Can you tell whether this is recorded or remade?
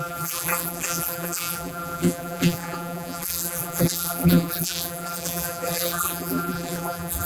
remade